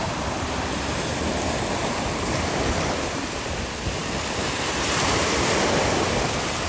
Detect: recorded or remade recorded